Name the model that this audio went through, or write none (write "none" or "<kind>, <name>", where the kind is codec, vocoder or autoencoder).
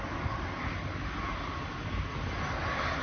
none